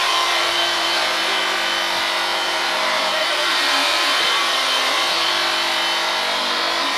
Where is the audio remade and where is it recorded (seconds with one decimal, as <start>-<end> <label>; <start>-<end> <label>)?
0.0-1.4 remade; 1.4-2.3 recorded; 2.3-5.3 remade; 5.3-7.0 recorded